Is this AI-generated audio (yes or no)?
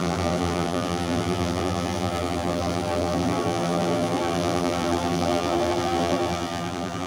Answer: yes